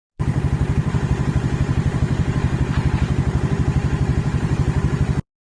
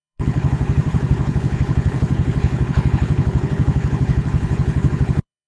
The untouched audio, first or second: first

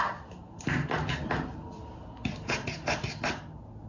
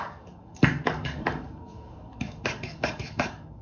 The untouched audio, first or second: first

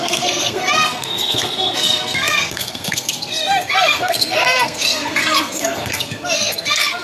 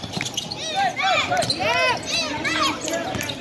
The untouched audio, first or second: second